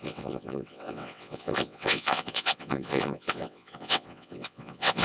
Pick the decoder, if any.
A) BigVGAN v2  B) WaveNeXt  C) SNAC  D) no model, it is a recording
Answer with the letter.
B